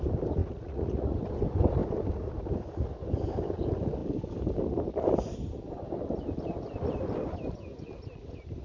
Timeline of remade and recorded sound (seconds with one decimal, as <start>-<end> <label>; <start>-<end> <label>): 0.0-0.4 recorded; 0.4-1.3 remade; 1.3-8.6 recorded